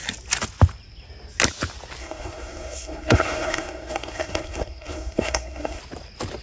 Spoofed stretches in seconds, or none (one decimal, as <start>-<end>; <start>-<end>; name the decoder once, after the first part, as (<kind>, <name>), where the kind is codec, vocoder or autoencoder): 2.0-5.8 (codec, SNAC)